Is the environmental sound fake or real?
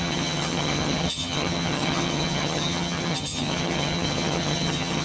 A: fake